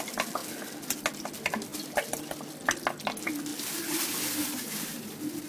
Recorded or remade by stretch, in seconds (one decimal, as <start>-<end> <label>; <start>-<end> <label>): 0.0-5.5 recorded